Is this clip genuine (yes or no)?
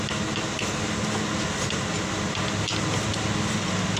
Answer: yes